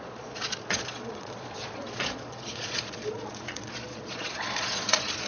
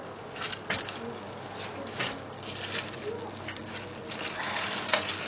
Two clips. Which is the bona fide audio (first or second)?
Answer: second